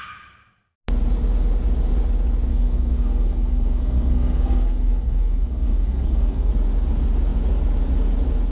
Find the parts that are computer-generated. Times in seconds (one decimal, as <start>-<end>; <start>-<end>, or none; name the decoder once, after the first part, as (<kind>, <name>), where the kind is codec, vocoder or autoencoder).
2.5-6.5 (codec, SNAC)